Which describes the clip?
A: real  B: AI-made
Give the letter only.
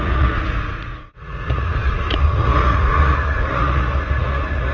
B